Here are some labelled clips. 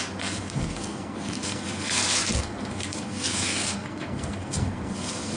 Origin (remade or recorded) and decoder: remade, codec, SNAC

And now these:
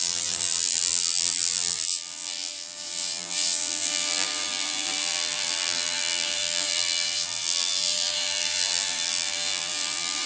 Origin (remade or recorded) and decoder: remade, vocoder, BigVGAN v2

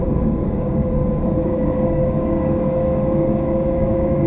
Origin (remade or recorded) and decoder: remade, codec, DAC